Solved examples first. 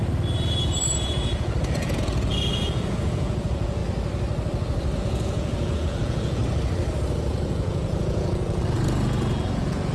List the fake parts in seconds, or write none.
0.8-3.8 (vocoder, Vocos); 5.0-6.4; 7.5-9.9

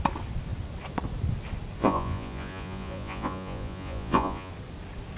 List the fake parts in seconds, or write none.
1.8-4.5 (vocoder, Vocos)

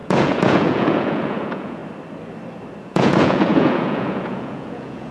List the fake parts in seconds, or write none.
0.0-1.8 (vocoder, Vocos); 2.8-5.1

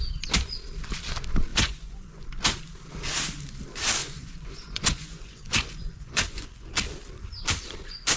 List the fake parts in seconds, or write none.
1.5-2.2 (vocoder, Vocos); 4.0-6.7

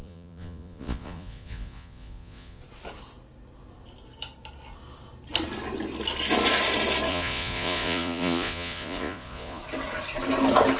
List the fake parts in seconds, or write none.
0.0-2.6 (vocoder, Vocos); 7.1-9.6

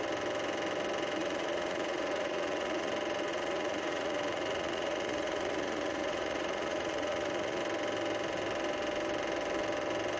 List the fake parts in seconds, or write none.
1.2-2.9 (vocoder, Vocos); 3.3-7.6

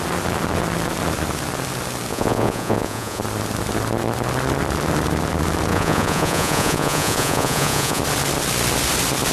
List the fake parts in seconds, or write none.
2.1-3.2 (vocoder, Vocos); 5.7-8.0

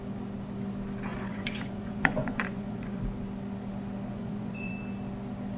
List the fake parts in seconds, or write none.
1.1-3.0 (vocoder, Vocos); 4.1-4.7